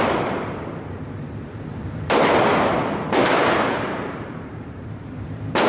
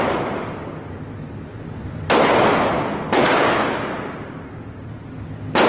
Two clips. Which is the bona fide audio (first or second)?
second